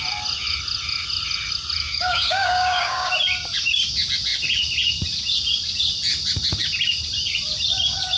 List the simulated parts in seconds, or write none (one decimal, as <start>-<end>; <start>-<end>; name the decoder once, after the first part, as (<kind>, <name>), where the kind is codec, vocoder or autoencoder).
1.8-3.1 (codec, DAC)